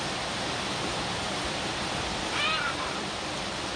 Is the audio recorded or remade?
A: recorded